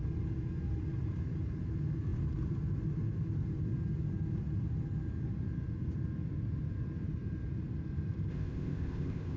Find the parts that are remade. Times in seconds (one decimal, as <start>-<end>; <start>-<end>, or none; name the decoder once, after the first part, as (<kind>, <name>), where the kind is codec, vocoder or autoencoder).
8.3-9.4 (codec, ZipCodec)